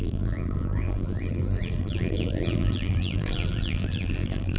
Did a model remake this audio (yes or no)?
yes